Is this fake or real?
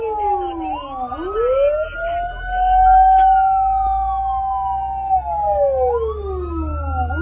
real